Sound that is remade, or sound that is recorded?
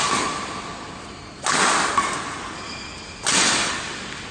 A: recorded